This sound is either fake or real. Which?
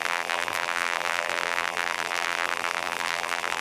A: fake